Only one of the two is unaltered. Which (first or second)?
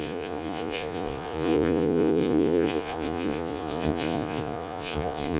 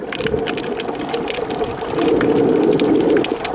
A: second